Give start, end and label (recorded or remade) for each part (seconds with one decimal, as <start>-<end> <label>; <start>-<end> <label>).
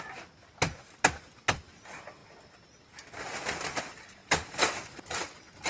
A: 0.0-5.7 recorded